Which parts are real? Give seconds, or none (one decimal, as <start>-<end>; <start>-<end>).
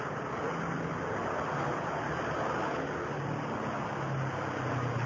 0.0-1.2; 2.2-5.1